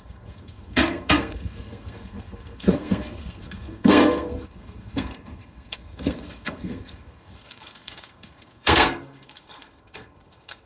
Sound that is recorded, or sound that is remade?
remade